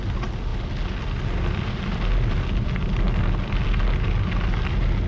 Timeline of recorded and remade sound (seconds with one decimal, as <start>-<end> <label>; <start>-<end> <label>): 0.0-5.1 recorded